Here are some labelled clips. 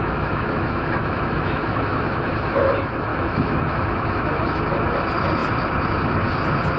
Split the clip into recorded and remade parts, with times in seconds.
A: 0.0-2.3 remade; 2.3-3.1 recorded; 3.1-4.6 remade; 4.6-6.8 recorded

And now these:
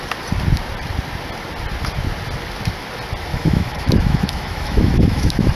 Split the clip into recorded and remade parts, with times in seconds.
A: 0.0-3.3 recorded; 3.3-5.5 remade

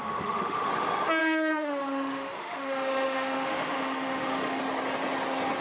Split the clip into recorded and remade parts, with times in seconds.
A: 0.0-0.7 remade; 0.7-1.2 recorded; 1.2-4.6 remade; 4.6-5.6 recorded

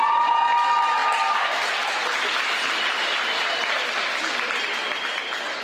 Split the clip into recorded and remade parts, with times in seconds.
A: 0.0-5.6 recorded